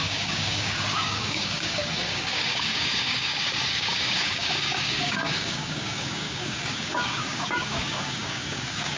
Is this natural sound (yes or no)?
no